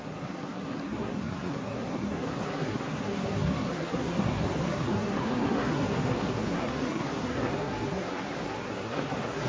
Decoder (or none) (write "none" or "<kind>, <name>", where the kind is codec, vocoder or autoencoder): codec, SNAC